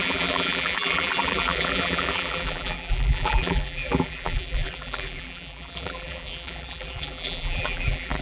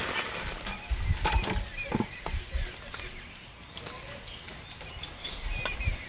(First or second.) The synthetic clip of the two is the first